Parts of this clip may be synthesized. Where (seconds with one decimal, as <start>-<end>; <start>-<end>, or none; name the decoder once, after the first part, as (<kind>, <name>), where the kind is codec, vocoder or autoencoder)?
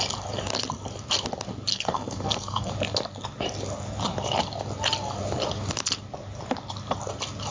1.7-2.7 (codec, SNAC)